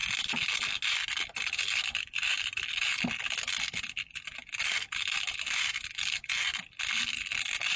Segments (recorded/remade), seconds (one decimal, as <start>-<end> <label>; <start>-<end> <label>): 0.0-7.8 recorded